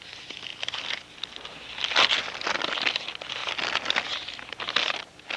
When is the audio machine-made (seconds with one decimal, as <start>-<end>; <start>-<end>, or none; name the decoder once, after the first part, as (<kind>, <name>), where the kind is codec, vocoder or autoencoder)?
none